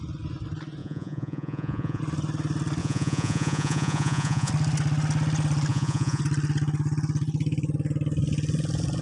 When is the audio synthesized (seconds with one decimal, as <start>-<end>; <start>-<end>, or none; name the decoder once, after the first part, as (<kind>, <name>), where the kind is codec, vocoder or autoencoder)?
0.8-2.0 (vocoder, Vocos); 2.8-4.5; 5.7-6.2